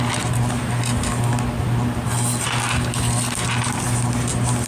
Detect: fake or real real